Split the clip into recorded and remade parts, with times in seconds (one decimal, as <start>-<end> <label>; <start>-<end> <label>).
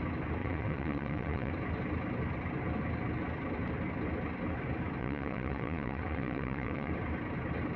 0.0-0.4 recorded; 0.4-1.5 remade; 1.5-5.0 recorded; 5.0-6.9 remade; 6.9-7.8 recorded